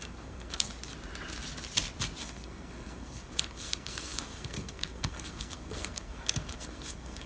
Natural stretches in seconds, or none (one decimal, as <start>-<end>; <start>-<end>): 0.7-2.2